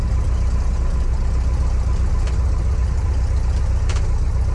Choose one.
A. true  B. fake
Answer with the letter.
A